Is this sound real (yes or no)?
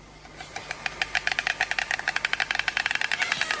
yes